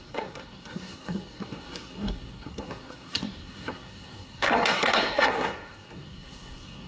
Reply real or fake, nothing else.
fake